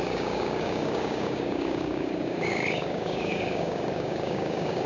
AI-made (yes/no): yes